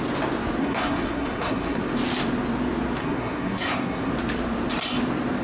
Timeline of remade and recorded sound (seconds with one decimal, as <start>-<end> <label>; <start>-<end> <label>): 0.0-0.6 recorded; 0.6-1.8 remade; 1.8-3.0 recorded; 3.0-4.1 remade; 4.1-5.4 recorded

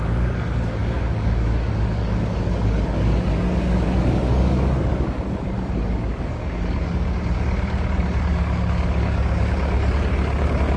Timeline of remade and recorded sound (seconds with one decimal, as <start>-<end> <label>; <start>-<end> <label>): 0.0-10.8 remade

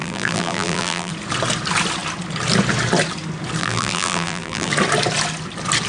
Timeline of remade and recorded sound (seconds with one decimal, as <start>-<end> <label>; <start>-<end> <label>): 0.0-1.1 remade; 1.1-3.6 recorded; 3.6-4.7 remade; 4.7-5.9 recorded

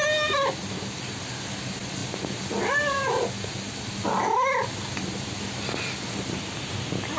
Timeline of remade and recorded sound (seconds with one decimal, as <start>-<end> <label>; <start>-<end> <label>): 0.0-7.2 recorded

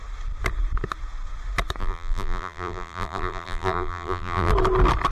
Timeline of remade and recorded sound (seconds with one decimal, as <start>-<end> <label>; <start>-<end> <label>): 0.0-1.8 recorded; 1.8-4.5 remade; 4.5-5.1 recorded

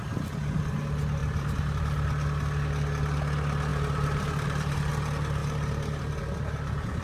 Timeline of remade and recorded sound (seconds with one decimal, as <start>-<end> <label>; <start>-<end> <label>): 0.0-1.2 recorded; 1.2-1.8 remade; 1.8-3.7 recorded; 3.7-4.9 remade; 4.9-5.4 recorded; 5.4-6.0 remade; 6.0-7.0 recorded

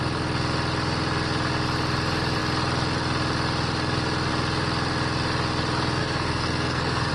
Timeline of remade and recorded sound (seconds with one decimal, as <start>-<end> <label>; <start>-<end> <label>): 0.0-6.0 recorded; 6.0-7.1 remade